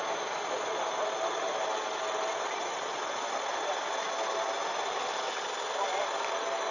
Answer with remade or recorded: recorded